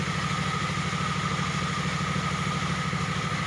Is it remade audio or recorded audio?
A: recorded